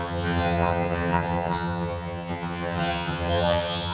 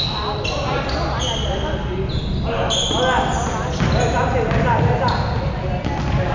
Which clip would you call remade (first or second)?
first